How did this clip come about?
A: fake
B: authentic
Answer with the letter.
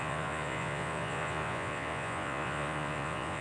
A